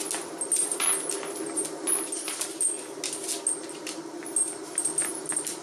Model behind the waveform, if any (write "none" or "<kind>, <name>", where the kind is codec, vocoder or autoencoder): none